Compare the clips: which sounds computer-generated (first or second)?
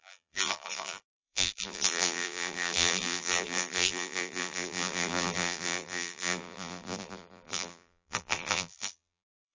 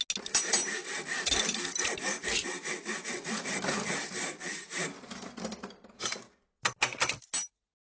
first